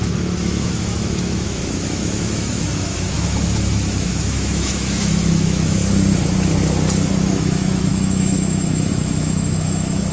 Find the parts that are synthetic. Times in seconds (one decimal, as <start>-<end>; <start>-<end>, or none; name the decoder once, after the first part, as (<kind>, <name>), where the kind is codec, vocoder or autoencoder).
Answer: 0.0-5.8 (autoencoder, DAC-VAE); 7.1-10.1